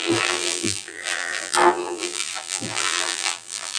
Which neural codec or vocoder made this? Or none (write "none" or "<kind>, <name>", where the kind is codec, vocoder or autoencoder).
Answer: vocoder, BigVGAN v2